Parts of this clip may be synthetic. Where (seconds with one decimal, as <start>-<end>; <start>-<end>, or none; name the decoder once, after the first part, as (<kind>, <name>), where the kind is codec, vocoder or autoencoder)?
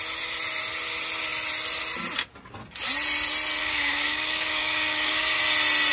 3.6-5.4 (codec, DAC)